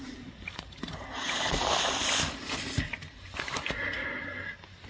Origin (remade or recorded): recorded